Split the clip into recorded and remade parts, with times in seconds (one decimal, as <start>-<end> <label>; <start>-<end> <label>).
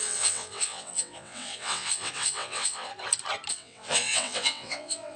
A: 0.0-2.9 remade; 2.9-3.5 recorded; 3.5-5.2 remade